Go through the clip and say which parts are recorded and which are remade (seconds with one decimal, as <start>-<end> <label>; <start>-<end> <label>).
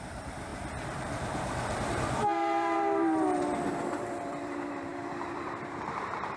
0.0-6.4 remade